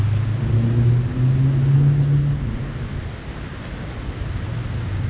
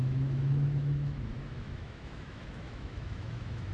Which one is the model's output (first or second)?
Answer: second